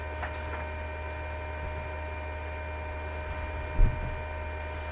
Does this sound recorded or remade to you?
recorded